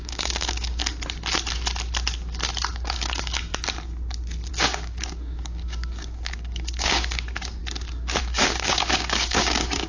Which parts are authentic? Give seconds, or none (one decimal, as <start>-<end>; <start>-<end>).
0.8-2.7; 3.5-4.5; 7.6-8.2